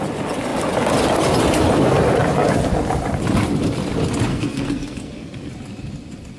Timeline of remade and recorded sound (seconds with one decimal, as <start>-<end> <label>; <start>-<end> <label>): 0.0-4.3 recorded; 4.3-5.5 remade; 5.5-6.4 recorded

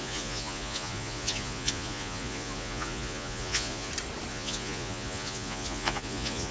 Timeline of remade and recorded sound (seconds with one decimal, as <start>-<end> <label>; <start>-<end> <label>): 0.0-3.9 remade; 3.9-4.3 recorded; 4.3-6.5 remade

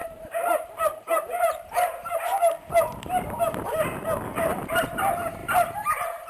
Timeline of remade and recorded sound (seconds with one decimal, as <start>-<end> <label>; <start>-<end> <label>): 0.0-3.4 remade; 3.4-4.5 recorded; 4.5-5.0 remade; 5.0-5.4 recorded; 5.4-6.3 remade

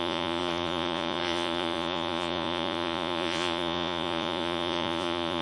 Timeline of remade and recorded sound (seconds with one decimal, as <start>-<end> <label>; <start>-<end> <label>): 0.0-5.4 remade